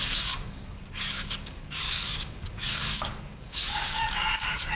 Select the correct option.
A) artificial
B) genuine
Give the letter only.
A